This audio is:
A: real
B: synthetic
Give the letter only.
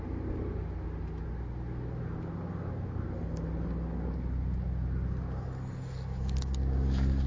A